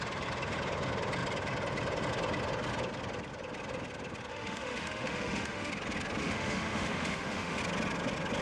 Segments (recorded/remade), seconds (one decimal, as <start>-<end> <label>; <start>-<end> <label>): 0.0-4.3 recorded; 4.3-5.7 remade; 5.7-6.2 recorded; 6.2-7.6 remade; 7.6-8.4 recorded